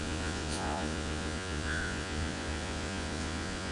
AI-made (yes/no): yes